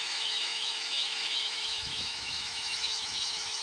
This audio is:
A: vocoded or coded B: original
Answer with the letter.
A